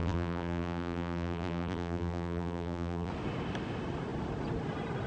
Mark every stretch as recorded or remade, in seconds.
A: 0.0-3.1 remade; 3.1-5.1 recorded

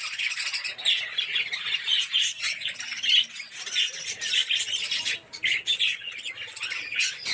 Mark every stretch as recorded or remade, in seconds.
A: 0.0-7.3 recorded

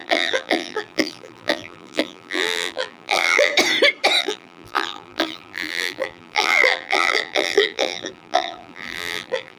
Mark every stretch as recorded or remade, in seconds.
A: 0.0-3.5 remade; 3.5-4.2 recorded; 4.2-9.6 remade